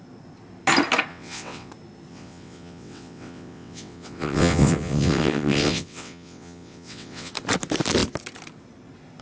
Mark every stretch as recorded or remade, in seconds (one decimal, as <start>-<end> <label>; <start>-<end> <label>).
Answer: 0.0-1.1 recorded; 1.1-1.7 remade; 1.7-2.1 recorded; 2.1-7.3 remade; 7.3-9.2 recorded